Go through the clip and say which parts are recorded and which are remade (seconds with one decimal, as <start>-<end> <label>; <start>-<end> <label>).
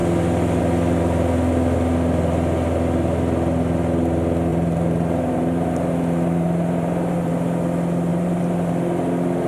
0.0-4.5 recorded; 4.5-7.3 remade; 7.3-8.1 recorded; 8.1-8.7 remade; 8.7-9.5 recorded